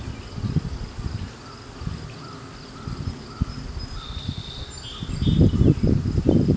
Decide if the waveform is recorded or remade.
recorded